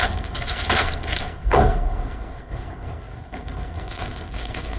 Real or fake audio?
fake